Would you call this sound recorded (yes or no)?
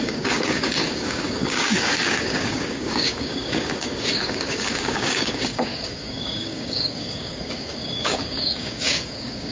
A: no